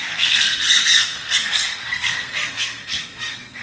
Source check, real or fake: fake